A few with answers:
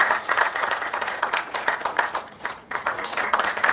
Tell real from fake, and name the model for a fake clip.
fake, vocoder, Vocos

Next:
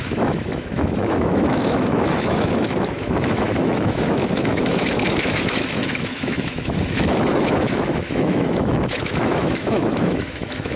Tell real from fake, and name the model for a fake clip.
fake, autoencoder, DAC-VAE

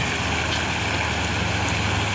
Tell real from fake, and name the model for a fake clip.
real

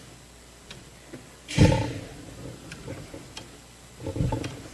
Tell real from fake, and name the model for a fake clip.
real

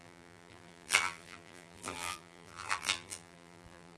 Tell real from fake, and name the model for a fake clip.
fake, vocoder, BigVGAN v2